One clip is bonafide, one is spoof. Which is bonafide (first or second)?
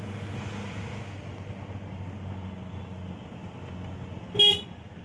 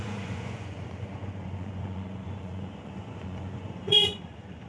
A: first